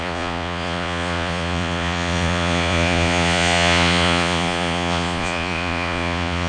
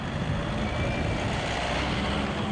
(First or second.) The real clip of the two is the second